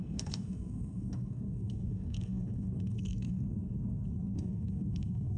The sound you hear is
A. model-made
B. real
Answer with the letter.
A